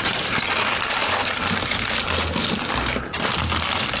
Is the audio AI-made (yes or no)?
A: no